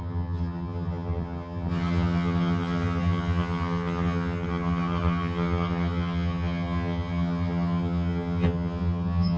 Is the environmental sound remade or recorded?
remade